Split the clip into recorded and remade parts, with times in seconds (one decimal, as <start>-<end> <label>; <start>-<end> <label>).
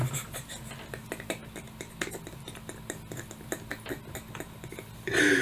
0.0-5.4 recorded